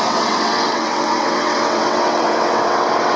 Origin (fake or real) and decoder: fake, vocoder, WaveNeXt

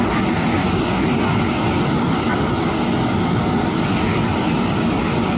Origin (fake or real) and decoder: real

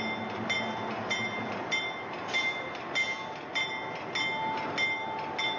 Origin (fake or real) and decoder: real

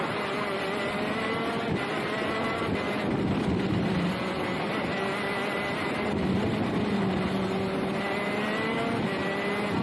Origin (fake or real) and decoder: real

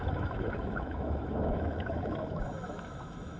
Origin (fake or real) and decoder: fake, autoencoder, DAC-VAE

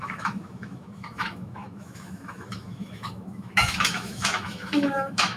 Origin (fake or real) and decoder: fake, autoencoder, DAC-VAE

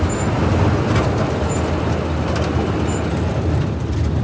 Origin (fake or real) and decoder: real